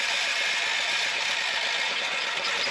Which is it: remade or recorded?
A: recorded